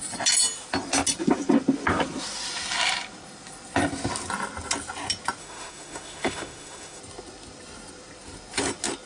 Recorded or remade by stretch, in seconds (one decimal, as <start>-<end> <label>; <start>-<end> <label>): 0.0-5.4 recorded; 5.4-7.0 remade; 7.0-9.1 recorded